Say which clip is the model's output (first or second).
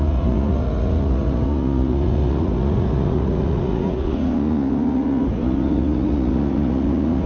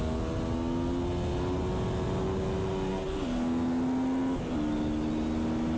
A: first